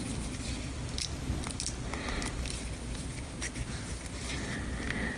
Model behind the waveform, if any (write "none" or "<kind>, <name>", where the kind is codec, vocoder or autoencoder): none